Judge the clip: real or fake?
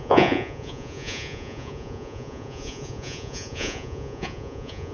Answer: fake